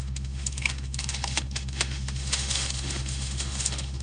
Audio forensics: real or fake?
fake